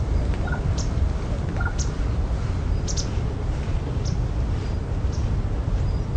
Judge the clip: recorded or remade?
remade